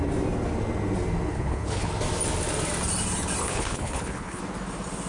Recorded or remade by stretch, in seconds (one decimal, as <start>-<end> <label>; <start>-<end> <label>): 0.0-1.3 recorded; 1.3-1.9 remade; 1.9-3.4 recorded; 3.4-4.4 remade; 4.4-5.1 recorded